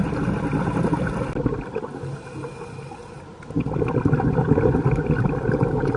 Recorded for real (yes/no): yes